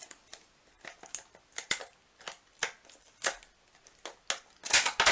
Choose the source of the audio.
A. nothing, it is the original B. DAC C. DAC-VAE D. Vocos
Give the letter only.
A